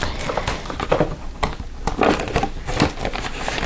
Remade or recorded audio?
recorded